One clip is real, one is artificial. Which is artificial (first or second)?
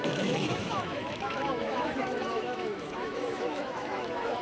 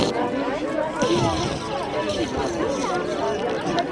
first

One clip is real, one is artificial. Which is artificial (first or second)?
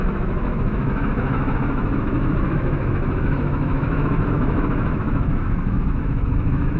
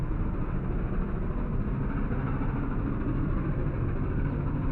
first